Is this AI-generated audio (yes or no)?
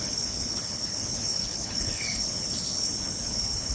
yes